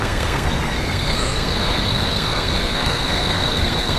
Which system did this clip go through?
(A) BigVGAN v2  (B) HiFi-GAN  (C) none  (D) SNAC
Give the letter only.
D